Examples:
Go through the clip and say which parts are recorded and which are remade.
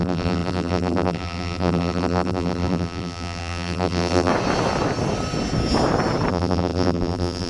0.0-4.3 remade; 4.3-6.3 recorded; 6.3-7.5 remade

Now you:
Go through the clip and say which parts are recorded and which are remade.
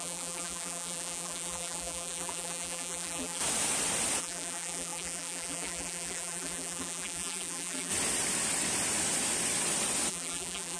0.0-3.4 remade; 3.4-4.2 recorded; 4.2-7.9 remade; 7.9-10.1 recorded; 10.1-10.8 remade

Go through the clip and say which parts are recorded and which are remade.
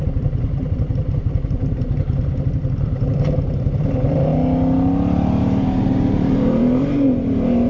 0.0-4.3 remade; 4.3-5.4 recorded; 5.4-7.7 remade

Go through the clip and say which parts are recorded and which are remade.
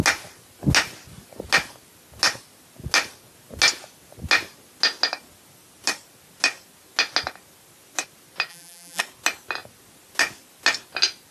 0.0-8.5 recorded; 8.5-9.0 remade; 9.0-11.3 recorded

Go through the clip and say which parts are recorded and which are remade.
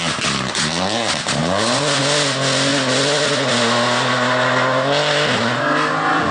0.0-1.4 recorded; 1.4-2.0 remade; 2.0-6.3 recorded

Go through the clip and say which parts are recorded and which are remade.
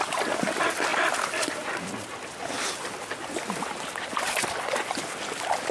0.0-5.7 recorded